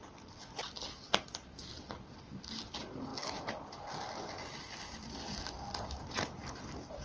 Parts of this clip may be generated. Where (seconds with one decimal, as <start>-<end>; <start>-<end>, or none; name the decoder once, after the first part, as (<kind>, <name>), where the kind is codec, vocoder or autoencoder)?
none